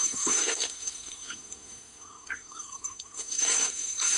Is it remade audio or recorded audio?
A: remade